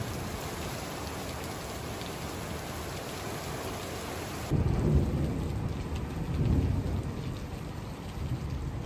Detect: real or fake real